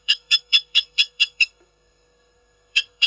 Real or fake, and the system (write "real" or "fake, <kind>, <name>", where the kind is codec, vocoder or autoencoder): fake, codec, SNAC